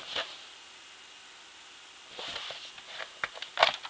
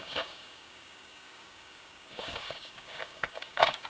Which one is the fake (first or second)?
second